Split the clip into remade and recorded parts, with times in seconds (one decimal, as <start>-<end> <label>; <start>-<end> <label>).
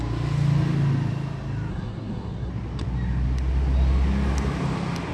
0.0-1.7 recorded; 1.7-2.5 remade; 2.5-5.1 recorded